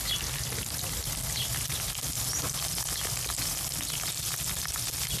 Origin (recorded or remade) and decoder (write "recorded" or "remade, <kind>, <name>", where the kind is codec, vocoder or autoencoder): recorded